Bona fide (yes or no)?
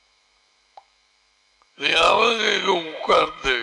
no